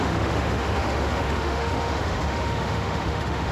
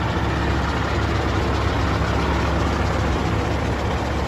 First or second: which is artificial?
first